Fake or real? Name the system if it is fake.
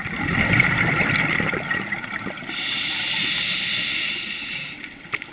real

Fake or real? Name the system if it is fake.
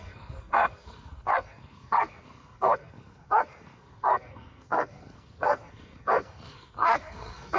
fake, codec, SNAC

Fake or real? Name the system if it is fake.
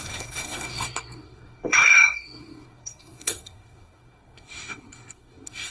fake, codec, SNAC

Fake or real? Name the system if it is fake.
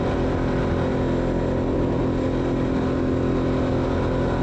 real